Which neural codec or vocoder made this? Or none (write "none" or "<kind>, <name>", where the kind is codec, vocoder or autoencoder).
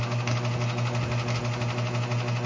none